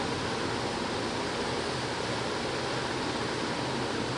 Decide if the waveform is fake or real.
real